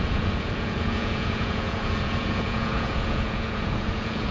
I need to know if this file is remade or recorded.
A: remade